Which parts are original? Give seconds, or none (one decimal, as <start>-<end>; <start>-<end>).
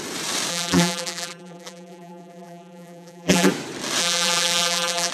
0.0-0.5; 3.5-4.0